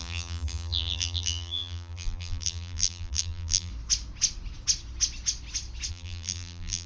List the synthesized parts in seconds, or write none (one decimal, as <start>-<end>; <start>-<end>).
0.0-3.7; 5.9-6.9